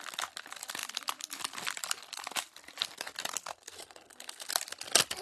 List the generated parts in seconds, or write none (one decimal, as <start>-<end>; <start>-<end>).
3.5-4.5